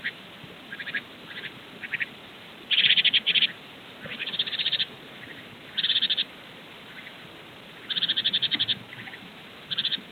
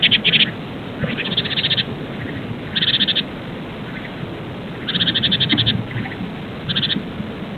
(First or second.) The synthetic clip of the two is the first